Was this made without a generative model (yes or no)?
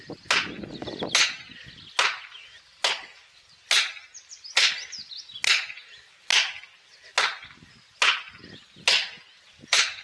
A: yes